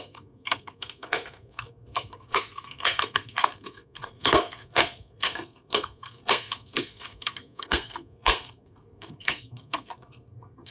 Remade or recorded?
remade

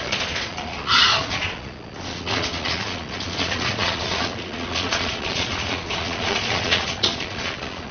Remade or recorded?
remade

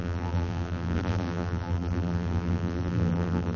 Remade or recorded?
remade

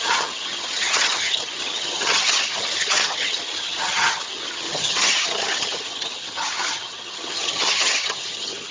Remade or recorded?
remade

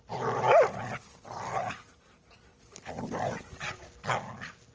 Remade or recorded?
recorded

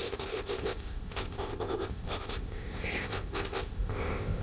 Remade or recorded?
remade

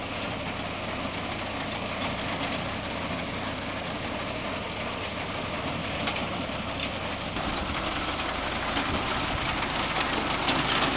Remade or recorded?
recorded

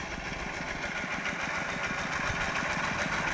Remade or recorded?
recorded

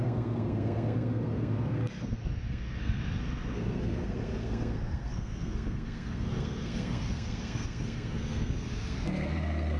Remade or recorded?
remade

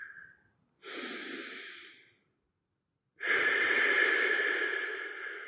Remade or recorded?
remade